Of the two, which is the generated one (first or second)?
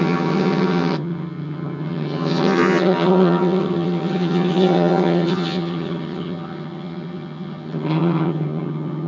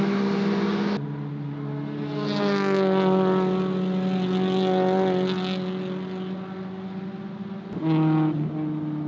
first